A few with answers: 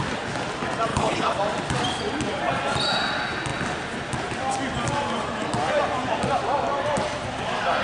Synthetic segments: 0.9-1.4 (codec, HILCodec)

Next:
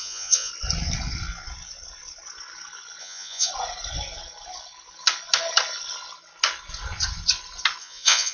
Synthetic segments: 0.0-0.5 (vocoder, Vocos); 3.0-3.5; 7.8-8.3

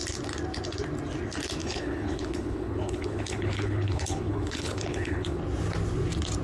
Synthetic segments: 1.6-5.4 (codec, HILCodec)